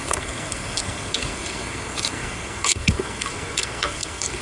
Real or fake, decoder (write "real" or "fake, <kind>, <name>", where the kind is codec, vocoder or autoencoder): fake, codec, SNAC